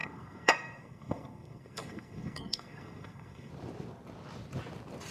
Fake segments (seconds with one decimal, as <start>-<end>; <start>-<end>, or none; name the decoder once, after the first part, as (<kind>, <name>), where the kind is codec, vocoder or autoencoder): 0.0-3.5 (codec, SNAC)